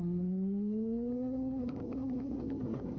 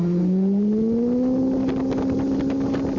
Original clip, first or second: second